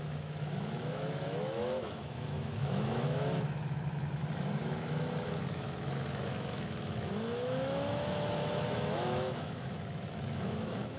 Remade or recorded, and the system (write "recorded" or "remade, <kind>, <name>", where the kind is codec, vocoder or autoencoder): remade, autoencoder, DAC-VAE